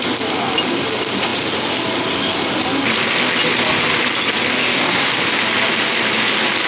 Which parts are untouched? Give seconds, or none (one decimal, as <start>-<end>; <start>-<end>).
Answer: 0.0-4.6; 5.1-6.7